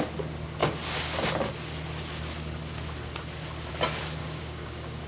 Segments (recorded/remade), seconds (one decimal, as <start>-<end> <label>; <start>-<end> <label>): 0.0-4.2 recorded; 4.2-5.1 remade